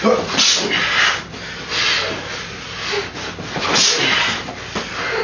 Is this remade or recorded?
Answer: recorded